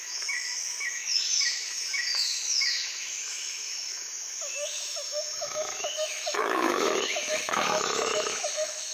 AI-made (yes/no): yes